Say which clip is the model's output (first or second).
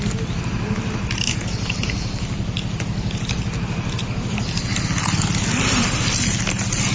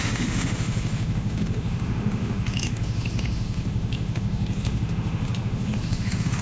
second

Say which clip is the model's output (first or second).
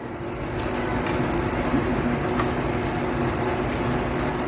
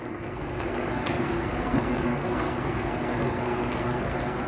second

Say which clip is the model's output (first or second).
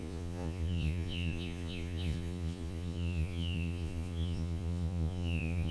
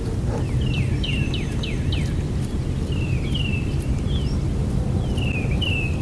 first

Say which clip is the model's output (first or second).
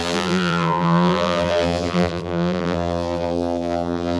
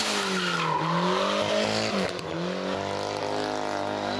first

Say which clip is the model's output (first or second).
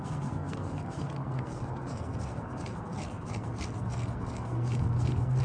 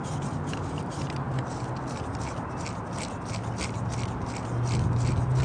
first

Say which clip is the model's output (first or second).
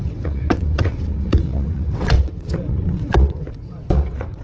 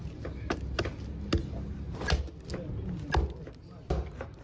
first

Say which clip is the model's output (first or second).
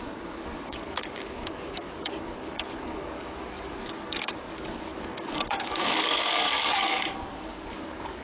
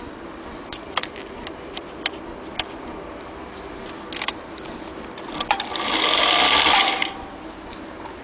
first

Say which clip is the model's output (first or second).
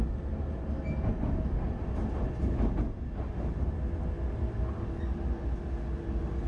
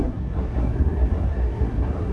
second